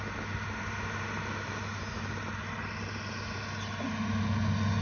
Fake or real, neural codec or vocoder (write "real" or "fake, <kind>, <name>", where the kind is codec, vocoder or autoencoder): real